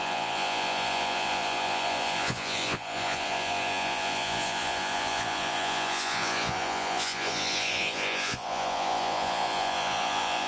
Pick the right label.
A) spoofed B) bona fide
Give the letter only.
A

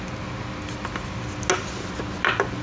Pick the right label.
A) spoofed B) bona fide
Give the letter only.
B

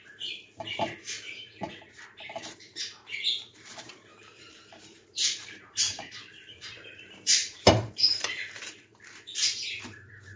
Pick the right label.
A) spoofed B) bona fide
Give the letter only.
A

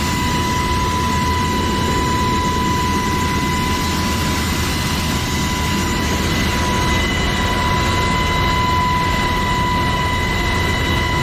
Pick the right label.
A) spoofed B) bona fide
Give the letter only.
B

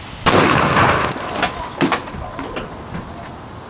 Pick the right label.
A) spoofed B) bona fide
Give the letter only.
B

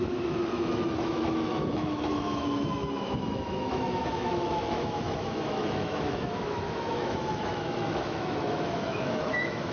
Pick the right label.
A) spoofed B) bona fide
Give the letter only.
A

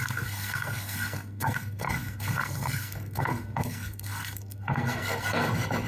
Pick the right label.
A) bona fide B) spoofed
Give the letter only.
B